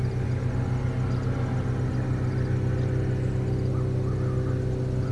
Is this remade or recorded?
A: recorded